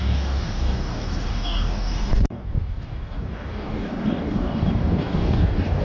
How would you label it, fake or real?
fake